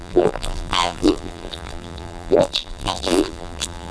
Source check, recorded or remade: remade